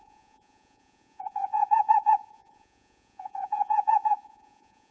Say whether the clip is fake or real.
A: fake